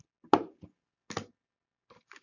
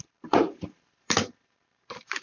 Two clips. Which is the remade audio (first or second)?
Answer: second